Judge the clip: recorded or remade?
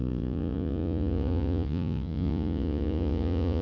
remade